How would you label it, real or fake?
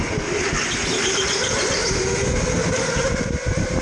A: real